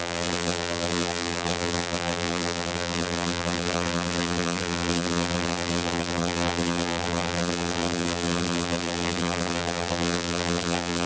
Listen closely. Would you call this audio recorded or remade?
remade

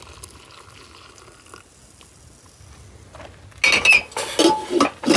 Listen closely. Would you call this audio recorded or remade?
recorded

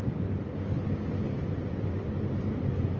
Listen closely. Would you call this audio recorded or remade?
recorded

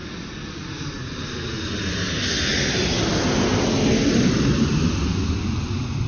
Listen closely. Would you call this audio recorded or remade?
recorded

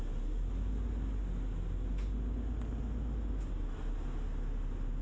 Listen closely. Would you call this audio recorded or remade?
recorded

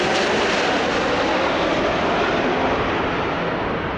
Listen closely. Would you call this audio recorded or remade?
recorded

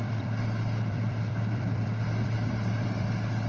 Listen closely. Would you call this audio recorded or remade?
remade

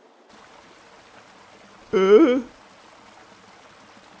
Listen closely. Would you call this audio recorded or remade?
recorded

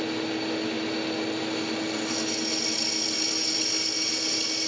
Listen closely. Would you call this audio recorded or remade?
recorded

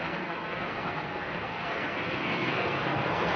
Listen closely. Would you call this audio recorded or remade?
remade